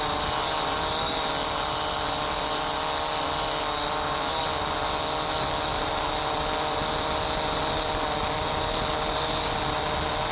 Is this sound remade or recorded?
recorded